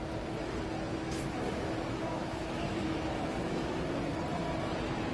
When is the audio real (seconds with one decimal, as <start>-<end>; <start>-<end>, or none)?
0.0-0.9; 4.0-5.1